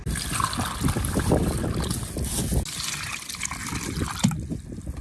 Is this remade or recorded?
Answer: recorded